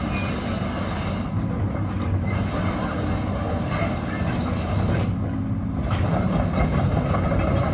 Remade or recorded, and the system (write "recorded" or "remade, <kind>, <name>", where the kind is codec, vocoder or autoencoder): recorded